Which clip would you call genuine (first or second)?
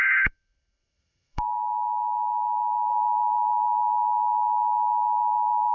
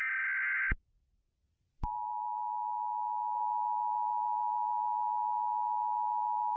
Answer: second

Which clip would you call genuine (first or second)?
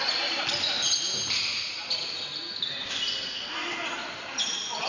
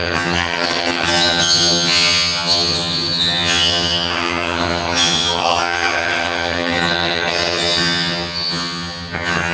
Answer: first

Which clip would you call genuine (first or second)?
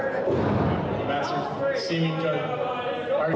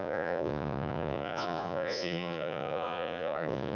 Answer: first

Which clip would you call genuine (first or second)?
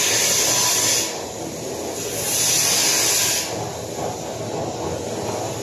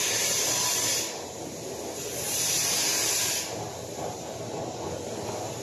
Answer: first